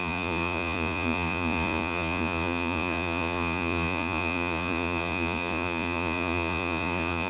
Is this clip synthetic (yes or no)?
yes